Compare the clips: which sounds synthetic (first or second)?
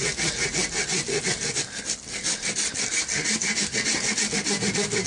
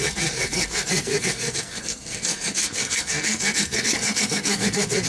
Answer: second